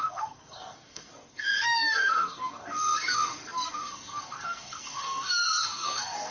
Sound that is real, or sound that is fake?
fake